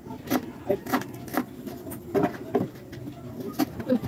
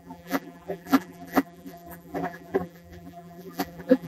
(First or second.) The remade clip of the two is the second